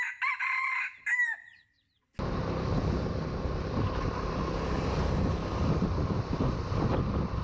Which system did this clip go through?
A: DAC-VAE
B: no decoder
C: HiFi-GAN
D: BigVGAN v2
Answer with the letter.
B